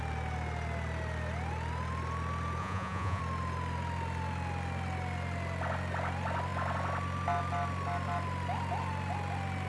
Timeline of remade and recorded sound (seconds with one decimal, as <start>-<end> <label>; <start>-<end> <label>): 0.0-2.6 recorded; 2.6-3.2 remade; 3.2-9.7 recorded